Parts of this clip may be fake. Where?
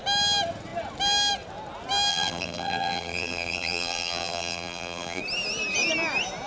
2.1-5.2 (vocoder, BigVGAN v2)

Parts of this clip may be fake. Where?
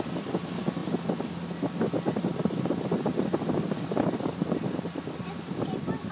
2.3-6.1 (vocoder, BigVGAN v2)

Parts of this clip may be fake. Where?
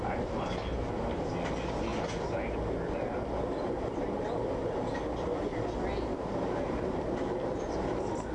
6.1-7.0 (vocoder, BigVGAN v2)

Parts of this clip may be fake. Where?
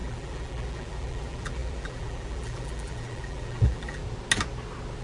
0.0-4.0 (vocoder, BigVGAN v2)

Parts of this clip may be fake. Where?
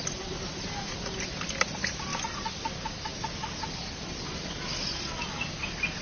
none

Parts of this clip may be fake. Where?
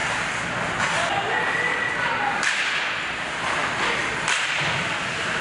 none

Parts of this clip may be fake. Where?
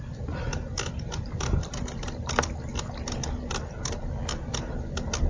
none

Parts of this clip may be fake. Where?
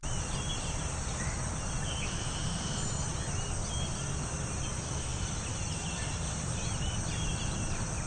0.5-1.2 (vocoder, BigVGAN v2); 5.1-6.7